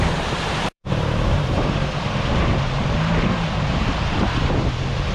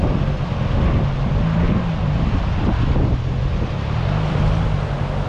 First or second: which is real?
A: second